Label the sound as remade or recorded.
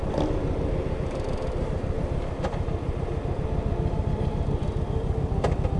recorded